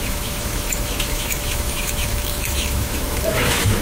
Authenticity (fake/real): fake